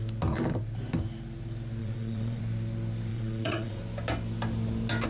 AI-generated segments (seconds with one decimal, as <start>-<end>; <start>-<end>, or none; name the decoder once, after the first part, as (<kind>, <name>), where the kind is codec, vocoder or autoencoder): 1.8-2.4 (vocoder, WaveNeXt); 3.1-3.8